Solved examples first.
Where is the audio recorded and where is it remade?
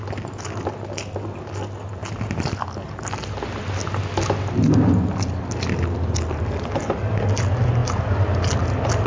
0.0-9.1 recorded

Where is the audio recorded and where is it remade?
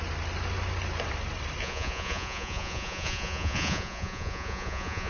0.0-1.6 recorded; 1.6-5.1 remade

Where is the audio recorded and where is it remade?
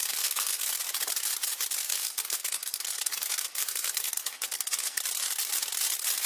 0.0-0.8 remade; 0.8-1.8 recorded; 1.8-5.0 remade; 5.0-6.3 recorded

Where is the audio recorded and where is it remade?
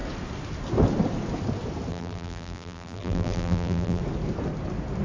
0.0-1.9 recorded; 1.9-4.0 remade; 4.0-5.0 recorded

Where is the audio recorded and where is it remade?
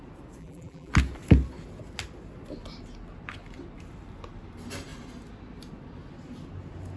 0.0-0.4 recorded; 0.4-0.9 remade; 0.9-7.0 recorded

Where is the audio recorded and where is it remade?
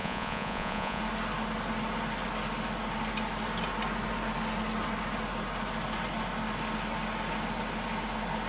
0.0-1.0 remade; 1.0-8.5 recorded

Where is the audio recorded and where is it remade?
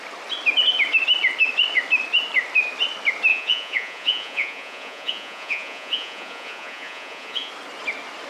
0.0-3.3 recorded; 3.3-7.5 remade; 7.5-8.3 recorded